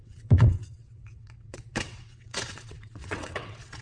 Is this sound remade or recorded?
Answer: remade